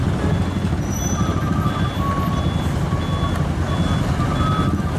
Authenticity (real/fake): real